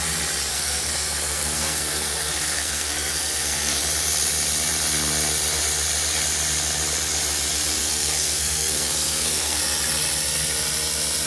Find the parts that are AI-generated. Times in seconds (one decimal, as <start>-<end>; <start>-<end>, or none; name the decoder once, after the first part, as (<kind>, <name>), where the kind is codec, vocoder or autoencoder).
0.5-3.8 (codec, SNAC); 7.8-9.6